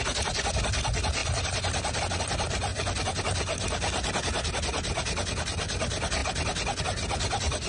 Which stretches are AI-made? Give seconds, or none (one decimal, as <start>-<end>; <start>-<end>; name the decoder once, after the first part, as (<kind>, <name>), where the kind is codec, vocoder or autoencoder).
none